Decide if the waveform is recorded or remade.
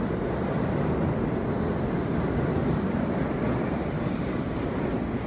recorded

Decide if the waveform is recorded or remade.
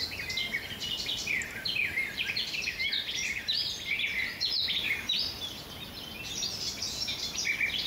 recorded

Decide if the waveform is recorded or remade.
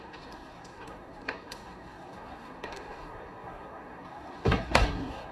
remade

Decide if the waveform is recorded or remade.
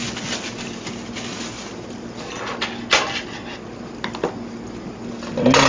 recorded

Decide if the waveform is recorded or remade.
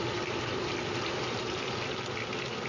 recorded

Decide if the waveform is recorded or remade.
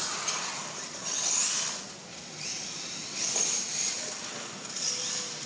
recorded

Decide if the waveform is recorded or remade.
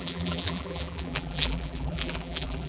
remade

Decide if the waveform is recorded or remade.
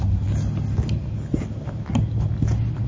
recorded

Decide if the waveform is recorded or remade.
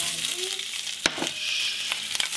remade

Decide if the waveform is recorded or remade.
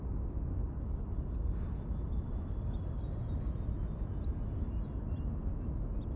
recorded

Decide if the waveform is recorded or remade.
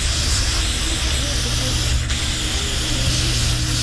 recorded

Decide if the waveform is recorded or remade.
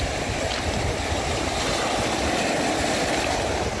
recorded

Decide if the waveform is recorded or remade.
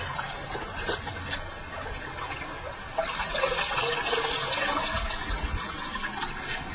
recorded